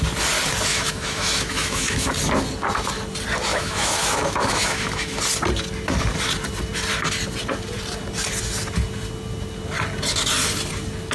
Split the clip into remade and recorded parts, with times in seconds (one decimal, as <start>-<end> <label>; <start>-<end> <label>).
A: 0.0-0.7 recorded; 0.7-2.1 remade; 2.1-3.5 recorded; 3.5-5.2 remade; 5.2-11.1 recorded